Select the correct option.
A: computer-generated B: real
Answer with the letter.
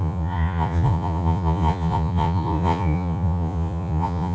A